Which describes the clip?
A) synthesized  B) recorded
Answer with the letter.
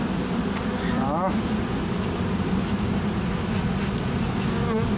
B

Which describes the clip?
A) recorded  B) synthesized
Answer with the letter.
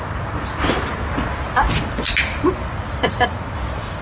A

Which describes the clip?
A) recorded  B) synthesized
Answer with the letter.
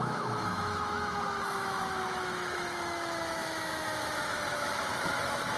B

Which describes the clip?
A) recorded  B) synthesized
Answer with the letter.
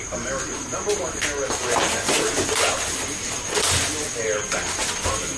A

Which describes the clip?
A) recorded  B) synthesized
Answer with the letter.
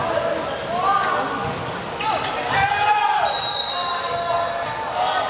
A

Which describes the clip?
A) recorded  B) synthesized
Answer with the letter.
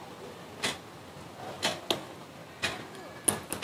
A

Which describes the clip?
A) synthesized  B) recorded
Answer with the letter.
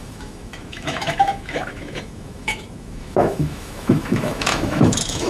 A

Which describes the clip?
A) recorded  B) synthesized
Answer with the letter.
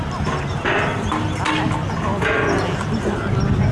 A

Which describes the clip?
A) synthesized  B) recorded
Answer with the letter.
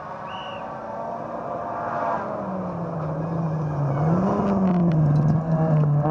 B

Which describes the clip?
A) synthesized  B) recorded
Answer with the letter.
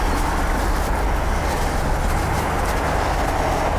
B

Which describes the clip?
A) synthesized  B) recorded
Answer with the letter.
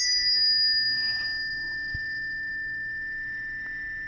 A